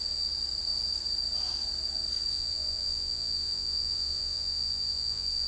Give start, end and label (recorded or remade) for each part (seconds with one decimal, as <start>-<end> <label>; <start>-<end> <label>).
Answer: 0.0-2.3 recorded; 2.3-5.5 remade